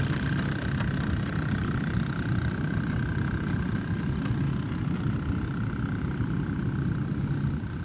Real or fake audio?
real